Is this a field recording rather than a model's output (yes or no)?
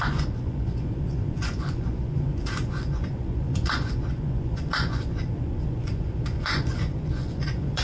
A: no